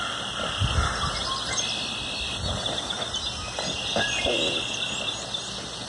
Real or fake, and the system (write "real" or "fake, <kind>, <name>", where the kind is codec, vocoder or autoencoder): real